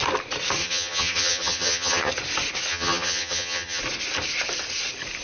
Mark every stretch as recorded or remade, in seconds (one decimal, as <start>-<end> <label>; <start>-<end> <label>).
0.0-0.6 recorded; 0.6-2.1 remade; 2.1-2.7 recorded; 2.7-3.8 remade; 3.8-5.2 recorded